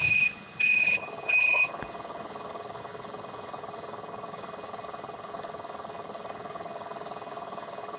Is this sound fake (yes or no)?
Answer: yes